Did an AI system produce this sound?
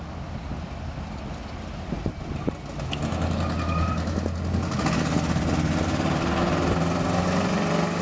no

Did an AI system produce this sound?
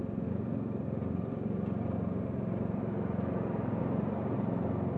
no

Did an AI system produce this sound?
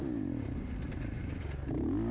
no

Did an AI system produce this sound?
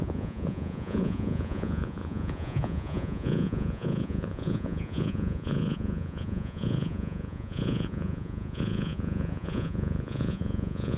yes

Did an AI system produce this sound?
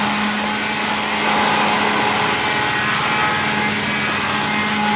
no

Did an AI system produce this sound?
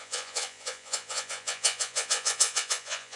yes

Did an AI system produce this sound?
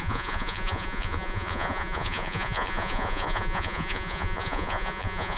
yes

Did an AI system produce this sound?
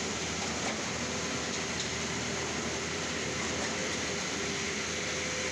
no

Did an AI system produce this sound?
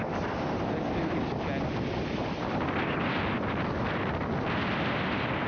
no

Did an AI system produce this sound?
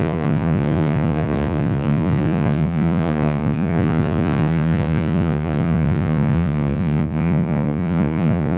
yes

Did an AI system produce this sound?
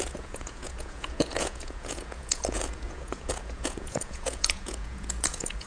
yes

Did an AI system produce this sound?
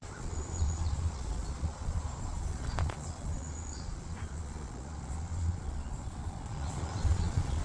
yes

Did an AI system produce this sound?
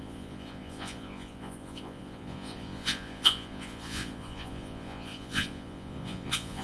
yes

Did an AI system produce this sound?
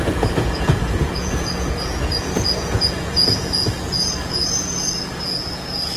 yes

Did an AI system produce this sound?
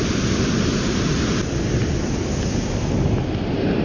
no